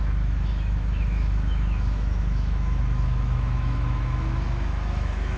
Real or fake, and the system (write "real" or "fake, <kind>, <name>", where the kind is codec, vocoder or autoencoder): fake, autoencoder, DAC-VAE